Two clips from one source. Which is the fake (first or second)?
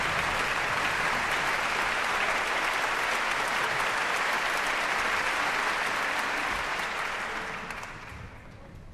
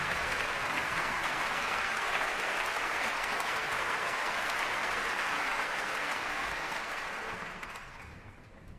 second